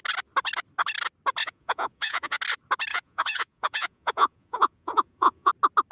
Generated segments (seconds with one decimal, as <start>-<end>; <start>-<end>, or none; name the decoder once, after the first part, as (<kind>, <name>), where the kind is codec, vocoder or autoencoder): 1.4-2.4 (vocoder, Vocos); 2.9-5.5